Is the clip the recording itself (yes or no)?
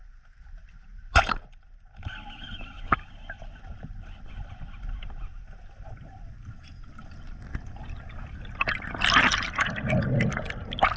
yes